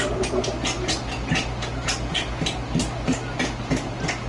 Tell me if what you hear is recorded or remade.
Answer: recorded